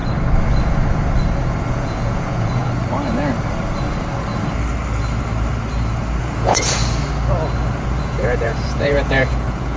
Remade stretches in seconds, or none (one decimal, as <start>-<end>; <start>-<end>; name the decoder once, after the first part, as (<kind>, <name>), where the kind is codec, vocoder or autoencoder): 1.7-2.6 (vocoder, Vocos); 6.2-6.8; 8.0-9.8

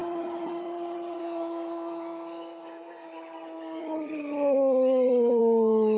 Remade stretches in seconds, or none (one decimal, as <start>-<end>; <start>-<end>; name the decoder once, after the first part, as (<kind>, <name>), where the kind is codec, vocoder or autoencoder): 0.0-1.2 (vocoder, HiFi-GAN); 3.8-5.4

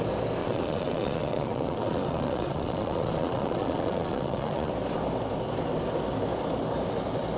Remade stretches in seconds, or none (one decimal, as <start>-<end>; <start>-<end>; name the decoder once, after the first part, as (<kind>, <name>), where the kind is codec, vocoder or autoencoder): 0.4-4.7 (vocoder, Vocos)

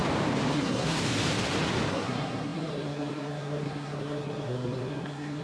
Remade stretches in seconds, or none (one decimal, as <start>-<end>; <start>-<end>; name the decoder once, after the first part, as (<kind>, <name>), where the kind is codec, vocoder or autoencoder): 0.5-1.0 (codec, SNAC); 1.9-5.4

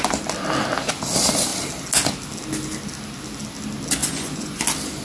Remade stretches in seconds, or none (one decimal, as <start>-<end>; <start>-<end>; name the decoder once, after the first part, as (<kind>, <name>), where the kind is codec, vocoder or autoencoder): 4.0-4.6 (vocoder, Vocos)

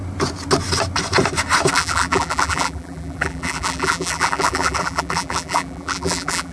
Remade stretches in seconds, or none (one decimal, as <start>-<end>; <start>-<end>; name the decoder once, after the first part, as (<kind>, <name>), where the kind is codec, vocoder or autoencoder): 1.7-6.5 (vocoder, BigVGAN v2)

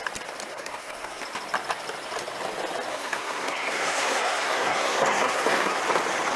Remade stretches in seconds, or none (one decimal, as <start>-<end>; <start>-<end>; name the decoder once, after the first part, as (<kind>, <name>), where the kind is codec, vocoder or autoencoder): 0.5-1.2 (codec, SNAC); 2.9-5.8

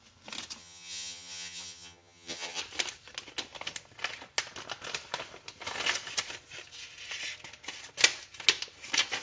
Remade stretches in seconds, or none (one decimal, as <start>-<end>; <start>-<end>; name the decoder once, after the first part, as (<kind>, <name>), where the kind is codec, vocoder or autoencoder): 0.6-2.6 (vocoder, HiFi-GAN)